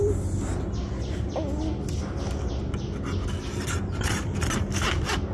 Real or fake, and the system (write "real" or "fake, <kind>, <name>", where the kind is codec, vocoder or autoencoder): real